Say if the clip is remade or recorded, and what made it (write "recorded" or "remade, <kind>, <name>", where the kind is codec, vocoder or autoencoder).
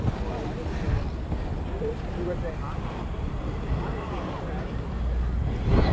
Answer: recorded